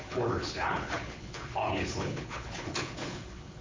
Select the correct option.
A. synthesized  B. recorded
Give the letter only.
A